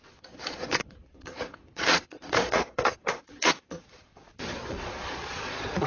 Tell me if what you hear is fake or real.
fake